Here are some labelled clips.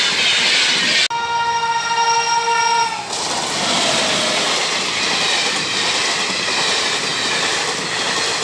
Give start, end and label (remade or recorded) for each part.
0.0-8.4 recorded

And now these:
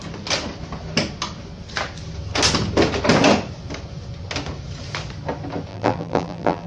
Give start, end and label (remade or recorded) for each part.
0.0-5.7 recorded; 5.7-6.7 remade

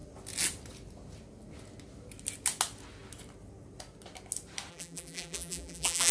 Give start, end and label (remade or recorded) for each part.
0.0-4.7 recorded; 4.7-6.1 remade

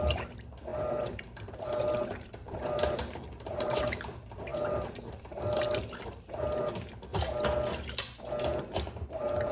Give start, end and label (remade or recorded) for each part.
0.0-7.1 remade; 7.1-8.4 recorded; 8.4-9.5 remade